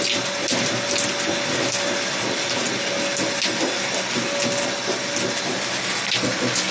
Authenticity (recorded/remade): recorded